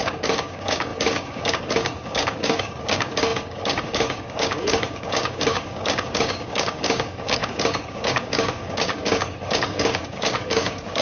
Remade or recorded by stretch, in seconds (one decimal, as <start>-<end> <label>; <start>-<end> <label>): 0.0-11.0 remade